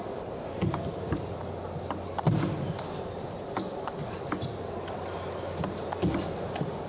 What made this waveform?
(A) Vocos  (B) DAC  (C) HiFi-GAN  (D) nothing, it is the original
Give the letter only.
D